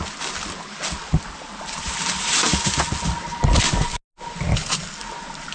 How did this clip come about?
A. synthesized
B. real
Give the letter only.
B